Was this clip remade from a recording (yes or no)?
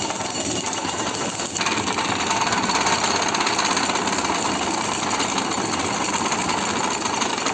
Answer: no